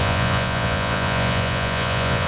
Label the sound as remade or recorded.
remade